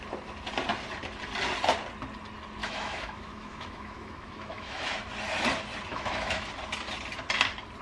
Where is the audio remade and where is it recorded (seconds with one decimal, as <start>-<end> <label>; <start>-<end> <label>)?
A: 0.0-2.6 recorded; 2.6-5.0 remade; 5.0-5.9 recorded; 5.9-6.5 remade; 6.5-7.8 recorded